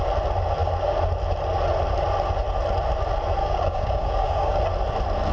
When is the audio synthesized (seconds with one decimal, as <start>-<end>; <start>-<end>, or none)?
3.4-4.6